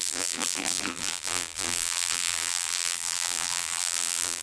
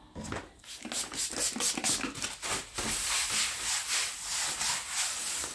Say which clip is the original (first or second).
second